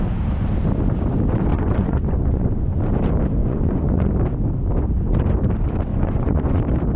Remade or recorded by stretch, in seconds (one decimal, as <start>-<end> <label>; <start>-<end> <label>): 0.0-1.5 recorded; 1.5-2.8 remade; 2.8-3.4 recorded; 3.4-4.1 remade; 4.1-5.9 recorded; 5.9-6.6 remade; 6.6-7.0 recorded